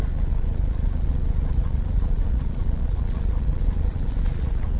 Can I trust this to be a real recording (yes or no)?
no